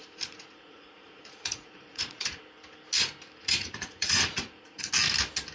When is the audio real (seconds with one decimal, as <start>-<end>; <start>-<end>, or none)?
2.4-3.4; 4.9-5.5